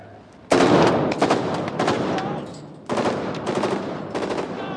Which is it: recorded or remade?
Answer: recorded